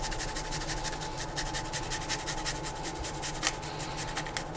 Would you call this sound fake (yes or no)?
no